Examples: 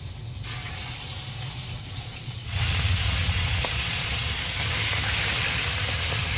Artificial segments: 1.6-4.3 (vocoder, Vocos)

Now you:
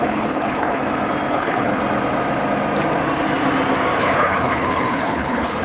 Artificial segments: 0.0-0.8 (codec, HILCodec); 1.3-1.8; 4.0-5.6

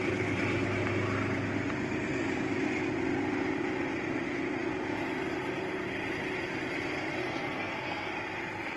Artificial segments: 7.2-8.1 (codec, SNAC)